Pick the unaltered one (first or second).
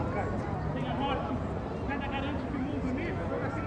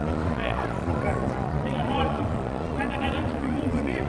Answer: first